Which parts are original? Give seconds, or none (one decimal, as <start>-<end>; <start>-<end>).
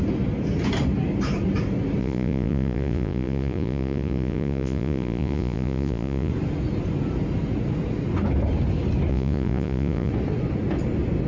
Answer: 0.0-2.0; 6.3-9.1; 10.1-11.3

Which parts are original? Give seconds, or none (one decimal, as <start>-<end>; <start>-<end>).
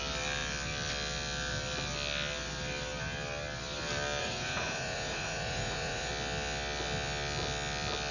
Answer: 0.0-4.2; 6.1-8.1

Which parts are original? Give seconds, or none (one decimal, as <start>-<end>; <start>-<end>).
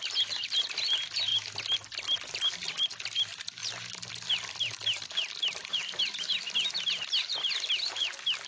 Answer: 0.0-8.5